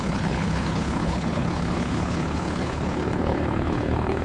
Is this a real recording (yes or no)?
no